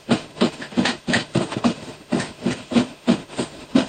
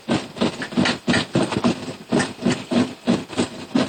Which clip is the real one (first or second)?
second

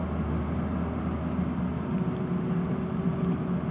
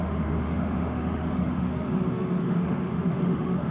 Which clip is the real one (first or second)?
first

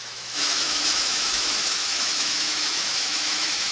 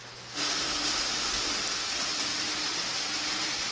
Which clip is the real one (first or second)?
second